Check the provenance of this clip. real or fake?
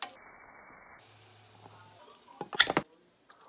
real